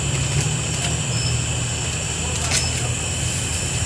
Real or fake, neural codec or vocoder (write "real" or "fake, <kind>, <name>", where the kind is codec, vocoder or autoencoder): real